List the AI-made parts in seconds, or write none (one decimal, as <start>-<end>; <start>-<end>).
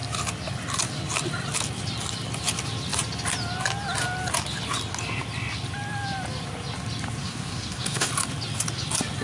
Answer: 7.2-8.1